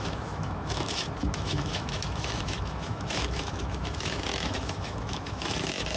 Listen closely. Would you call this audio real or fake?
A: fake